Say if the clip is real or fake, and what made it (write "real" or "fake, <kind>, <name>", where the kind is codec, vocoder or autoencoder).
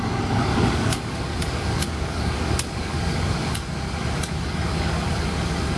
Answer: fake, codec, DAC